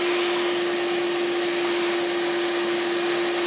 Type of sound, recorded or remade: recorded